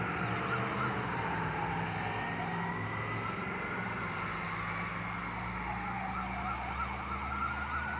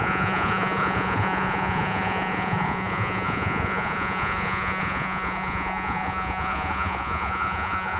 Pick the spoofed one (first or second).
second